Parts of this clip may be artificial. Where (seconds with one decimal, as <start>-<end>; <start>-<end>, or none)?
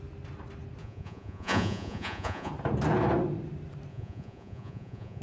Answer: 0.8-2.5; 3.9-5.2